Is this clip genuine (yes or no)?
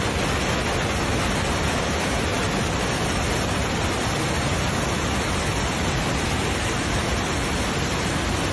yes